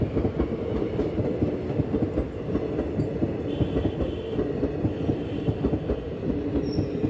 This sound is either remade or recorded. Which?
recorded